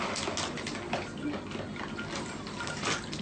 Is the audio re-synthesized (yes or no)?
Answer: no